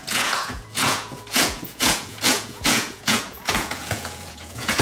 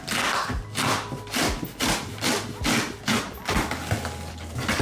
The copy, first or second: first